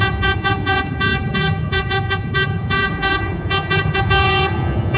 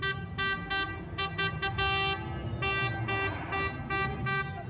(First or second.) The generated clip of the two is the first